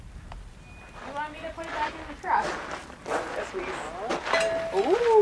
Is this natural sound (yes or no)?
yes